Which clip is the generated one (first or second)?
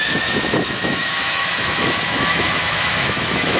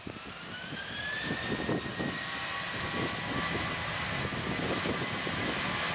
first